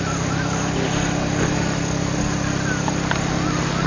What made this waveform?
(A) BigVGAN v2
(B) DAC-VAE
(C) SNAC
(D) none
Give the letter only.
D